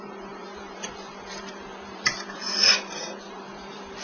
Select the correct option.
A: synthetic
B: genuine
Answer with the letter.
A